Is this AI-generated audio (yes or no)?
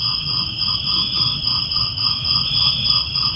yes